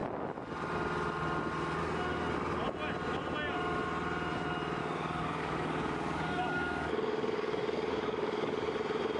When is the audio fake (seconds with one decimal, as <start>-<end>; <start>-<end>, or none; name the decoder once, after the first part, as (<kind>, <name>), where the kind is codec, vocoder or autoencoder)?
4.8-8.7 (codec, DAC)